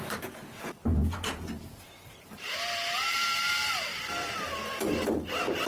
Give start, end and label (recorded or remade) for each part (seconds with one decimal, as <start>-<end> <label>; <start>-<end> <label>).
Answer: 0.0-5.7 remade